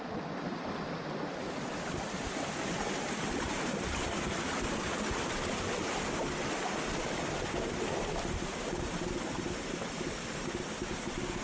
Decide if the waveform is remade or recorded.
recorded